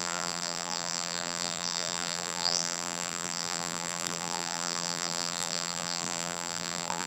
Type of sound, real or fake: fake